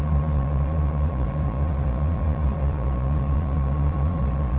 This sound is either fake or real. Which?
fake